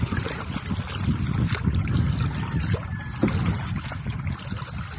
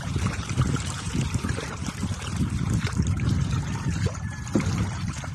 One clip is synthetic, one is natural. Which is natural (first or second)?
first